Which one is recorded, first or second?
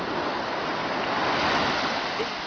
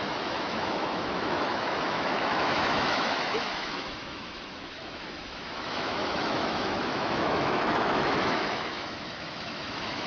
first